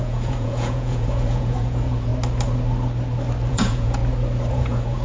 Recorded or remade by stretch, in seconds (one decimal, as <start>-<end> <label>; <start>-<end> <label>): 0.0-2.1 remade; 2.1-3.5 recorded; 3.5-4.0 remade; 4.0-4.5 recorded; 4.5-5.0 remade